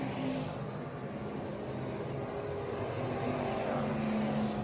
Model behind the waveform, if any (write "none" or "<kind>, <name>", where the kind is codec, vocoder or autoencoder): none